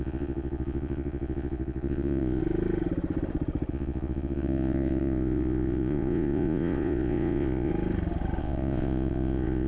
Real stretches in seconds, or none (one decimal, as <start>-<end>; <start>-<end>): 2.4-3.7; 7.7-8.4